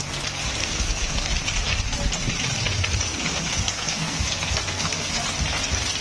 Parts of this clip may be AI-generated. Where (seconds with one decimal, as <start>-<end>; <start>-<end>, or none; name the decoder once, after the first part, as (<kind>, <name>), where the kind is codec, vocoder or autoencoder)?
0.6-1.3 (codec, SNAC); 3.1-5.2

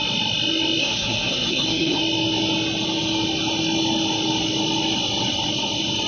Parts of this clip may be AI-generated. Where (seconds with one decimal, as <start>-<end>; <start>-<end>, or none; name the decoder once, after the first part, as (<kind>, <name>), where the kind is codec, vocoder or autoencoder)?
0.8-2.0 (codec, SNAC)

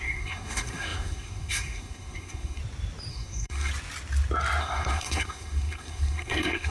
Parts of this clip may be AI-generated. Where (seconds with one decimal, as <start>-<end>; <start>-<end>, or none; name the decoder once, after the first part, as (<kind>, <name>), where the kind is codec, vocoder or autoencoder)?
0.0-2.6 (codec, SNAC); 3.1-3.7; 4.6-6.7

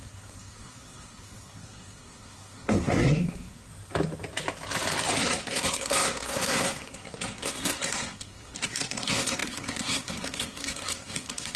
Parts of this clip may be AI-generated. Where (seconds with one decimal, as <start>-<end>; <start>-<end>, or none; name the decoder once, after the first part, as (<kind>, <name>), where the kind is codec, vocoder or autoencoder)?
0.0-3.7 (codec, SNAC); 5.2-11.6

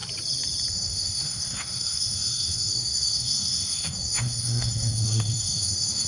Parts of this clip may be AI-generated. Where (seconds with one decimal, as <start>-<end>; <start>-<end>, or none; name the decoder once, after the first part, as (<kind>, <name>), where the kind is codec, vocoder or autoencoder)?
0.7-6.1 (codec, SNAC)

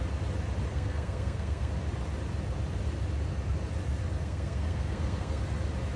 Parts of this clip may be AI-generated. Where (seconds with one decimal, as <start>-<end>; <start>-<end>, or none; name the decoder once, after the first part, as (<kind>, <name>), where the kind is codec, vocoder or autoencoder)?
0.7-1.7 (codec, SNAC); 4.2-5.4

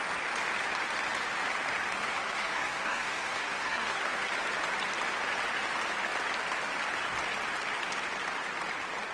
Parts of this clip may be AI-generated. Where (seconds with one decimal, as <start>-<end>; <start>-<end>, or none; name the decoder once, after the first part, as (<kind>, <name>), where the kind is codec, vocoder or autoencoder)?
2.0-4.3 (codec, SNAC)